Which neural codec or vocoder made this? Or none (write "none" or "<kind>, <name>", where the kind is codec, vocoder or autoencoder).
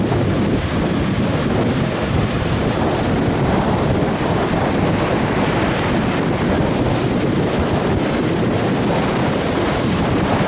none